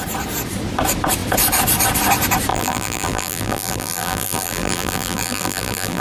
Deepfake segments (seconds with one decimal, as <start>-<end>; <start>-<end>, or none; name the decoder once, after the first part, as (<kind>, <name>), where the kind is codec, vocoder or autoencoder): 2.5-6.0 (vocoder, BigVGAN v2)